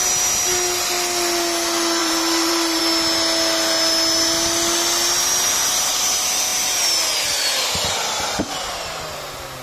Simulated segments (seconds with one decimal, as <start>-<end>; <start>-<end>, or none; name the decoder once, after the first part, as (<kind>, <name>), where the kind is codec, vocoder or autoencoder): 2.0-2.8 (vocoder, BigVGAN v2)